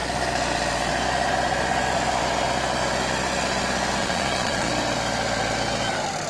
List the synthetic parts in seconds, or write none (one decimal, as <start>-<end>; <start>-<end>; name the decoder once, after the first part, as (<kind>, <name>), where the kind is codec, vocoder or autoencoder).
4.0-4.7 (vocoder, Vocos)